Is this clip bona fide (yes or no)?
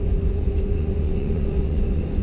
no